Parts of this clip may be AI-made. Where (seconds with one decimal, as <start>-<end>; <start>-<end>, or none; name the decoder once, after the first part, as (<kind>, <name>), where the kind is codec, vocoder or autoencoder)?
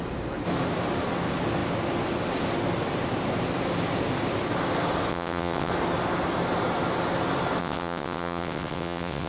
5.1-5.7 (vocoder, WaveNeXt); 7.6-9.3